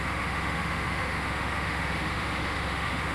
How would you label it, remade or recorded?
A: remade